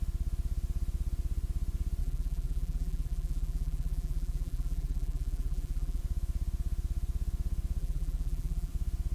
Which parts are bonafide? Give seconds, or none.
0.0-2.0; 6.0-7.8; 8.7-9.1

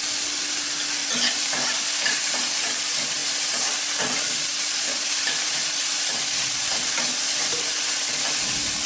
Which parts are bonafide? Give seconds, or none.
0.0-1.0; 1.8-3.2; 8.1-8.9

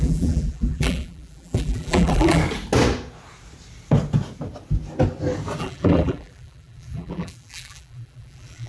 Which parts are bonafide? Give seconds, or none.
2.4-5.6

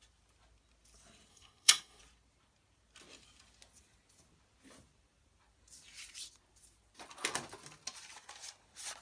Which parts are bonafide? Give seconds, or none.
0.0-1.3; 2.0-9.0

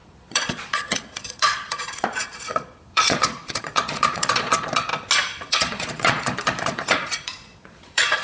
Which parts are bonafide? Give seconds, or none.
4.9-5.5

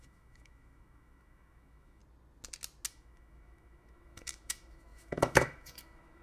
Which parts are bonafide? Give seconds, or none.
2.0-2.9